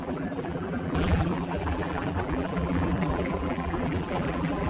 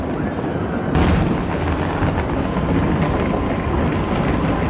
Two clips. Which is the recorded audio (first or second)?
second